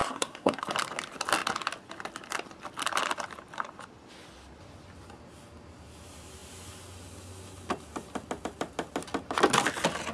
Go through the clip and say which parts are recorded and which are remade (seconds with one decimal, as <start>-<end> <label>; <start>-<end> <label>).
0.0-0.6 remade; 0.6-10.1 recorded